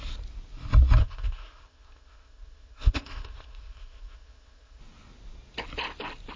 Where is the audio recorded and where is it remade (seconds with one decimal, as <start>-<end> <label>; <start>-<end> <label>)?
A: 0.0-1.0 recorded; 1.0-4.8 remade; 4.8-6.4 recorded